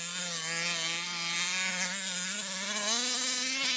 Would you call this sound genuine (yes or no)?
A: yes